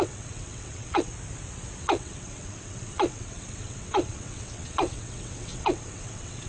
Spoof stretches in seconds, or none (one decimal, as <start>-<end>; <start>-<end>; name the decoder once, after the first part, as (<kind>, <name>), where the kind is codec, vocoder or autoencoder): 0.0-1.1 (vocoder, WaveNeXt); 1.8-6.5